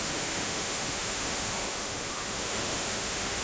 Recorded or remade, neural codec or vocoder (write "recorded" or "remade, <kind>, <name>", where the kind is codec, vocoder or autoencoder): remade, autoencoder, DAC-VAE